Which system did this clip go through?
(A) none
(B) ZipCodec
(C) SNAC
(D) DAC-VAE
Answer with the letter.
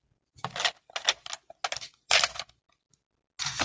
A